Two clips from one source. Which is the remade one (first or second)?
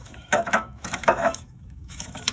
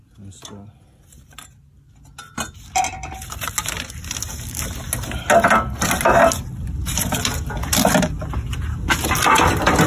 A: first